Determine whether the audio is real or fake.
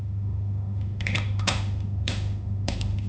fake